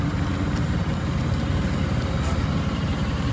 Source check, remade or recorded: recorded